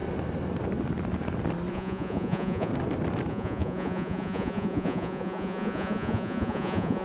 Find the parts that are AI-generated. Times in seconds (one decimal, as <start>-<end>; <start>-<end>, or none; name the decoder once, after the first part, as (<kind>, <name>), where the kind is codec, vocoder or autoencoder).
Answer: 1.7-2.7 (vocoder, Vocos); 3.3-7.0